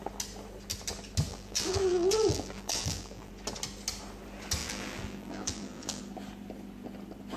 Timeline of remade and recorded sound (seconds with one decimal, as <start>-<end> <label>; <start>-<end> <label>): 0.0-1.3 recorded; 1.3-3.3 remade; 3.3-4.6 recorded; 4.6-6.0 remade; 6.0-7.4 recorded